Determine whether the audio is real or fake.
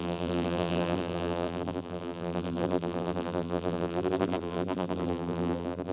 fake